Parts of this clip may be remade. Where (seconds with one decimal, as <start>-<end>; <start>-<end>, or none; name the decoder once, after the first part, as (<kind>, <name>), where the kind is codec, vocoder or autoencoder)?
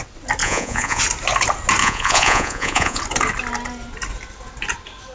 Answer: 0.4-1.0 (vocoder, Vocos); 1.8-3.0